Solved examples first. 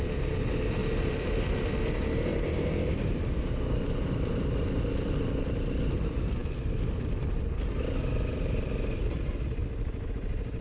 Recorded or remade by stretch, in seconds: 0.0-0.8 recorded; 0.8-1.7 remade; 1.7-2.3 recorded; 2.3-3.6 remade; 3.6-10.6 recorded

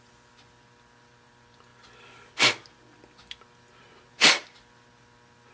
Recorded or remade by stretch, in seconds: 0.0-5.5 recorded

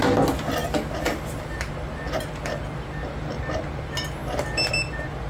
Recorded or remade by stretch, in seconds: 0.0-5.3 recorded

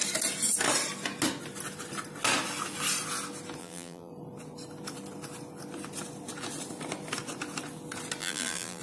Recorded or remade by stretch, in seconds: 0.0-3.6 recorded; 3.6-4.1 remade; 4.1-8.2 recorded; 8.2-8.8 remade

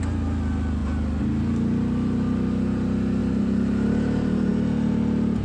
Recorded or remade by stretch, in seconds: 0.0-3.2 recorded; 3.2-4.5 remade; 4.5-5.4 recorded

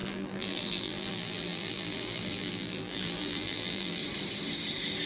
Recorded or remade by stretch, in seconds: 0.0-4.0 remade; 4.0-5.1 recorded

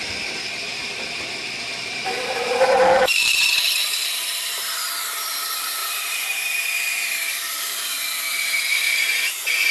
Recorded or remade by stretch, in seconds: 0.0-9.7 remade

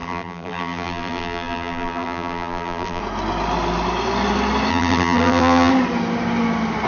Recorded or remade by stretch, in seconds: 0.0-3.0 remade; 3.0-4.7 recorded; 4.7-5.7 remade; 5.7-6.9 recorded